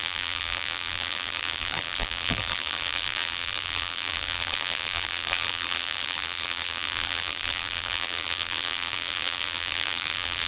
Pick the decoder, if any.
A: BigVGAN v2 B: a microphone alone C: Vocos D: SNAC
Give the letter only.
A